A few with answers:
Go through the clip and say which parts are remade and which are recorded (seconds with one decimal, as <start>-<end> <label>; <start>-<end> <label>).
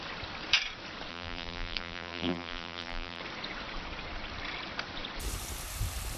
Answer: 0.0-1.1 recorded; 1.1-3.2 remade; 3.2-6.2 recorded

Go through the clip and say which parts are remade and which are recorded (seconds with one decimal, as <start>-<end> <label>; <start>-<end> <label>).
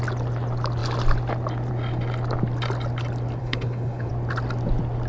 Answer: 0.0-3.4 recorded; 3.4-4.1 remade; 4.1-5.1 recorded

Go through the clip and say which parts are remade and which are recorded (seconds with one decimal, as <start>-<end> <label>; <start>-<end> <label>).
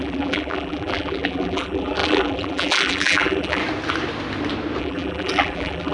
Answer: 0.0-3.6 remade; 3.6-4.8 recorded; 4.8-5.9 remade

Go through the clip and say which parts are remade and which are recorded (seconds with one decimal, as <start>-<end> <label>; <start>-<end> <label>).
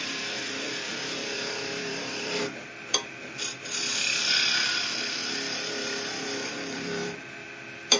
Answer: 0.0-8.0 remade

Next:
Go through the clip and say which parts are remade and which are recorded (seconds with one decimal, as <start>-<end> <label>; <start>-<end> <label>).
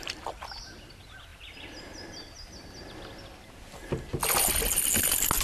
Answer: 0.0-5.4 recorded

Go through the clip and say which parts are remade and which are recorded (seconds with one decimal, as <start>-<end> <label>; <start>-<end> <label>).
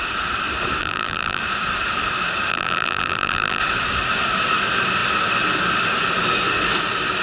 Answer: 0.0-0.8 recorded; 0.8-1.4 remade; 1.4-2.5 recorded; 2.5-3.6 remade; 3.6-7.2 recorded